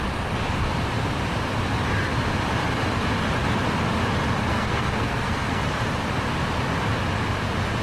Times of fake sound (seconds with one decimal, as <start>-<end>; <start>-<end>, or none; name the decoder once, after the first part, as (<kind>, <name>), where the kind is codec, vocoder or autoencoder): 4.5-5.6 (codec, SNAC)